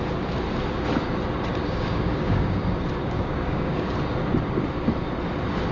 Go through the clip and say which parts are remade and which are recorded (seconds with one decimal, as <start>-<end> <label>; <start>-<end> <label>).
0.0-1.6 recorded; 1.6-2.6 remade; 2.6-3.0 recorded; 3.0-3.9 remade; 3.9-5.7 recorded